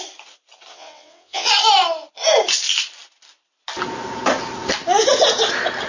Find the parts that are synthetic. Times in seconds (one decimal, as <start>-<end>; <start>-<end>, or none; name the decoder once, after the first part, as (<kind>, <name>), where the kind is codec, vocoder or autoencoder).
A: 0.7-1.5 (vocoder, WaveNeXt)